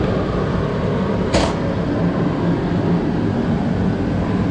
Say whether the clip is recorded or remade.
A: recorded